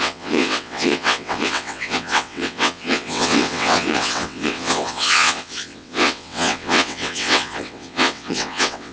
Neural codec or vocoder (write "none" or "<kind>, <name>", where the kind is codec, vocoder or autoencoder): vocoder, WaveNeXt